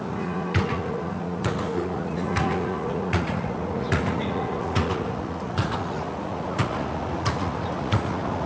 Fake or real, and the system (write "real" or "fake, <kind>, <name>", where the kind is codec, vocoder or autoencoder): fake, vocoder, Vocos